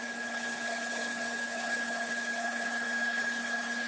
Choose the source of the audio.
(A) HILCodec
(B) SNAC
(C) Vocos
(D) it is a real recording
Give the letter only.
A